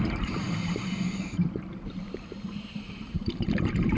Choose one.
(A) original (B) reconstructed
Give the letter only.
B